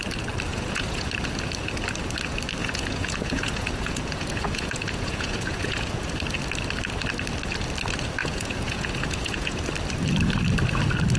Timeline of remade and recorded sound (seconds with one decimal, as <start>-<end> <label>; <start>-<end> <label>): 0.0-0.5 recorded; 0.5-1.1 remade; 1.1-2.6 recorded; 2.6-6.1 remade; 6.1-8.2 recorded; 8.2-9.6 remade; 9.6-11.2 recorded